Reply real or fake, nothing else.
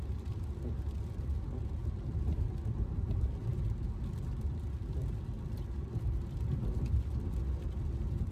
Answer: real